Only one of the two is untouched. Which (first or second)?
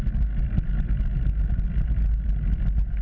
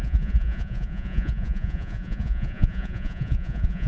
first